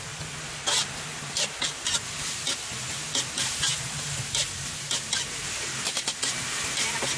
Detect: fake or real real